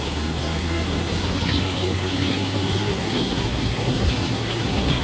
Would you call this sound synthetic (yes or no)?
yes